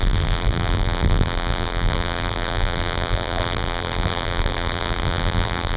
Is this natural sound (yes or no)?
no